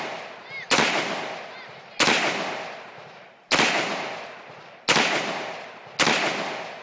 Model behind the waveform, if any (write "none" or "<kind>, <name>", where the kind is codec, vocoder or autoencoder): none